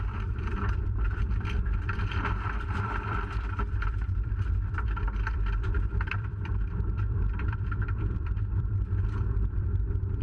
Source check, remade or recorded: remade